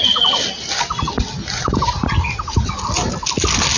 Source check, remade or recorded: recorded